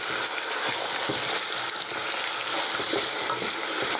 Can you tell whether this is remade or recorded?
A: recorded